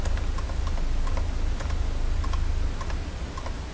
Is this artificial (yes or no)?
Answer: no